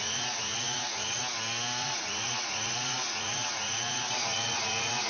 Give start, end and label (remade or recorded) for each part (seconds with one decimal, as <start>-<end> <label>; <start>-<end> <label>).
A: 0.0-1.2 remade; 1.2-1.8 recorded; 1.8-5.1 remade